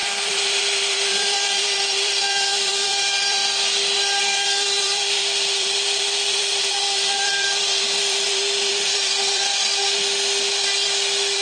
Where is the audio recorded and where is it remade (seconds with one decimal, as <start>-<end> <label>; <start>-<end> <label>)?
0.0-3.4 remade; 3.4-4.2 recorded; 4.2-9.6 remade; 9.6-11.4 recorded